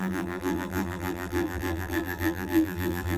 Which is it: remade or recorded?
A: remade